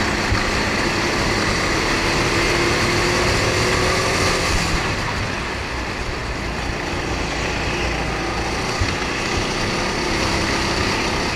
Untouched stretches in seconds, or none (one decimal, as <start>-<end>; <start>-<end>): 0.0-11.4